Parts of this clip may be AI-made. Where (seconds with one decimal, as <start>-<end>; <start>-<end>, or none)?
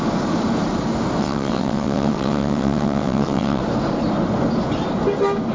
1.2-3.6